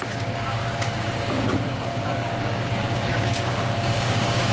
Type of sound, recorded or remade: remade